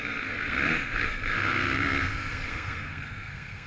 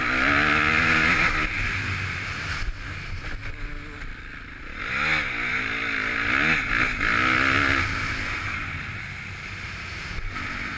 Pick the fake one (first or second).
first